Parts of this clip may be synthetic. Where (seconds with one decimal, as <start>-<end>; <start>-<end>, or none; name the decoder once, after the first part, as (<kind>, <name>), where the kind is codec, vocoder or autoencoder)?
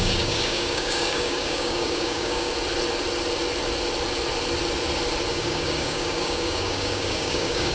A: 0.0-2.5 (codec, DAC); 5.3-7.7